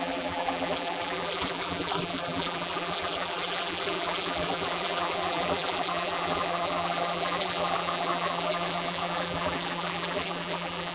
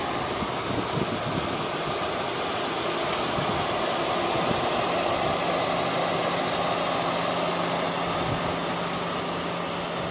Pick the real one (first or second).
second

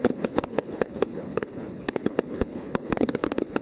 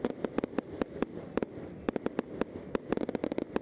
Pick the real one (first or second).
second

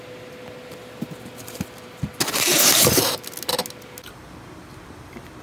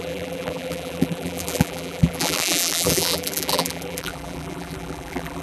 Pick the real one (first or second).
first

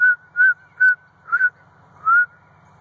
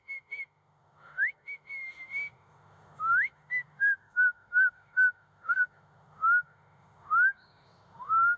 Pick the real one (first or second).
first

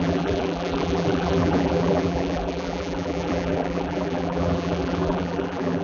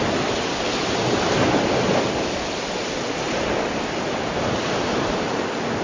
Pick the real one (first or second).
second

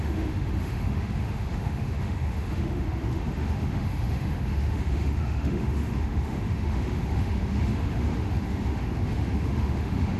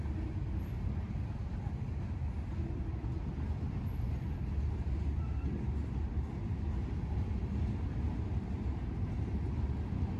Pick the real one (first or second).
second